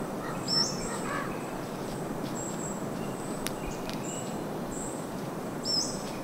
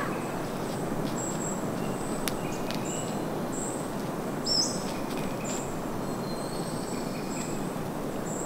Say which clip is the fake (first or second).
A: first